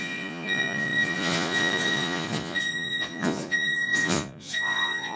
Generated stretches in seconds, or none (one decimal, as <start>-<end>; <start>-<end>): 0.0-5.2